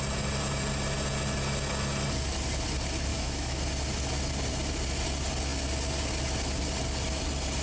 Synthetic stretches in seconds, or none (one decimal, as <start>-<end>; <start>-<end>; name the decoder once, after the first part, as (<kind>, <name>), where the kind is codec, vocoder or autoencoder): 3.1-3.6 (autoencoder, DAC-VAE)